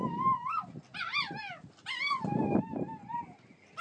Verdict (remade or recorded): recorded